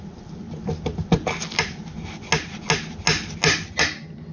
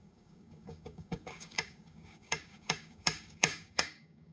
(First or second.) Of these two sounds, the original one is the first